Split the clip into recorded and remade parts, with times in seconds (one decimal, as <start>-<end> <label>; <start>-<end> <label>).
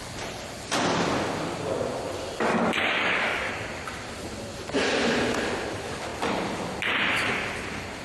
0.0-2.5 recorded; 2.5-3.5 remade; 3.5-8.0 recorded